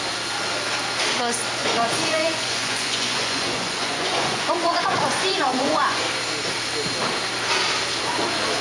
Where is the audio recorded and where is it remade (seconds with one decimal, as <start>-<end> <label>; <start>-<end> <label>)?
0.0-1.6 recorded; 1.6-6.0 remade; 6.0-8.6 recorded